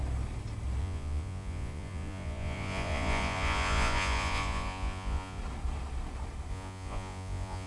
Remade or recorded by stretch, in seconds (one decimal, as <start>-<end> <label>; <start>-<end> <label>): 0.0-0.8 recorded; 0.8-5.4 remade; 5.4-6.5 recorded; 6.5-7.7 remade